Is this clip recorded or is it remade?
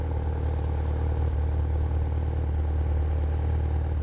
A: recorded